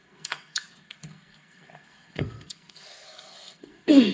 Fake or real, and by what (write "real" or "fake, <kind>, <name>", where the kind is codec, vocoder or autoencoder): fake, codec, SNAC